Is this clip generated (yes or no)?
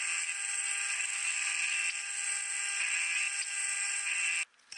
no